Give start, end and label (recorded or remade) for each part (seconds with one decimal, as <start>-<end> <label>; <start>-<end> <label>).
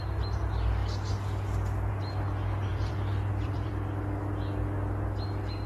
0.0-2.7 recorded; 2.7-3.7 remade; 3.7-5.7 recorded